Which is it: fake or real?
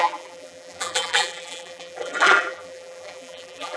fake